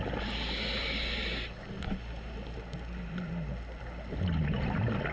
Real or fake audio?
real